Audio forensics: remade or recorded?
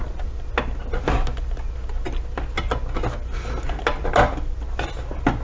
recorded